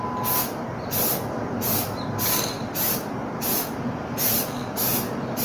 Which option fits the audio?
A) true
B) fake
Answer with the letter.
A